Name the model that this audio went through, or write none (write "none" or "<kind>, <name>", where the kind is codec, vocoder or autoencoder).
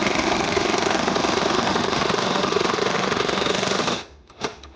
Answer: autoencoder, DAC-VAE